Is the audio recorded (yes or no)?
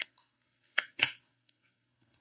no